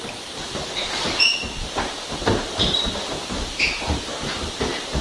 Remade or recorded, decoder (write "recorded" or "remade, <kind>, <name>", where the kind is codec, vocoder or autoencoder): remade, vocoder, BigVGAN v2